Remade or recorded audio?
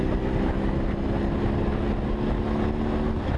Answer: recorded